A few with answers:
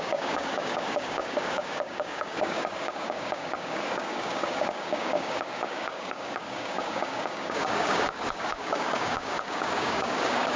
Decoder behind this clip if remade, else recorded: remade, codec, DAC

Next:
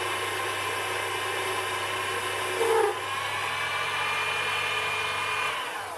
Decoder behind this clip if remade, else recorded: recorded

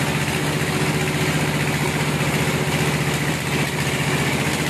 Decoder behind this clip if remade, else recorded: recorded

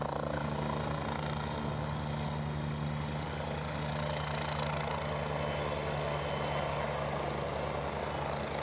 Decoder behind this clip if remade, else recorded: recorded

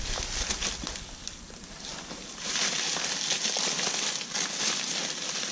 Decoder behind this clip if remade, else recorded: recorded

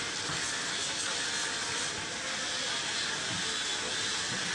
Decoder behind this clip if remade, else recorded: recorded